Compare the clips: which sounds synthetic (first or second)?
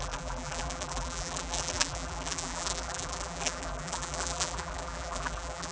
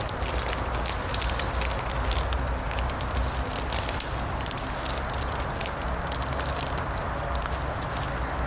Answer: first